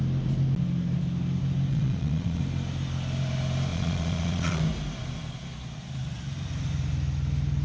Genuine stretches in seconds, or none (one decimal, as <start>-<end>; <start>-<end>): 0.0-1.7; 2.4-3.7; 4.6-7.6